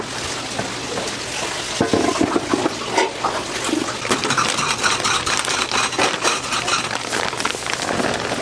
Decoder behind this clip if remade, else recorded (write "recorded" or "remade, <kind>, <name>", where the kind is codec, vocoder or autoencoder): recorded